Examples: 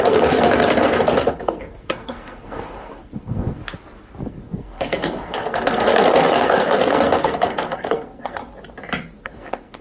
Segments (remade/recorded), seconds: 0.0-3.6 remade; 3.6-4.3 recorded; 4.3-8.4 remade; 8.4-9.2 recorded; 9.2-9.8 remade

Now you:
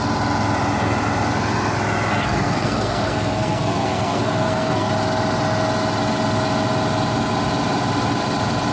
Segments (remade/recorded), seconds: 0.0-2.1 recorded; 2.1-4.9 remade; 4.9-8.7 recorded